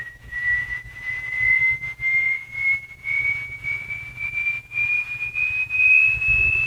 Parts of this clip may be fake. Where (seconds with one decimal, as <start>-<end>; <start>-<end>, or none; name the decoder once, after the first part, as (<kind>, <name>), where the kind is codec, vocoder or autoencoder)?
0.0-1.6 (vocoder, Vocos); 2.2-6.7